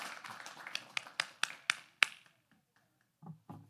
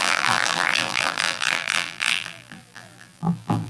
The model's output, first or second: second